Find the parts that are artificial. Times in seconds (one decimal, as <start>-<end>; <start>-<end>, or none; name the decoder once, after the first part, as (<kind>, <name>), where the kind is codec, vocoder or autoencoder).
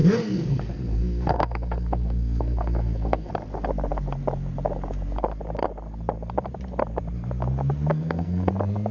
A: 0.0-3.3 (codec, SNAC); 7.9-8.5